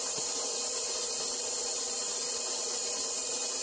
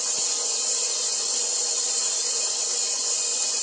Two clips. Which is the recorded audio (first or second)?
first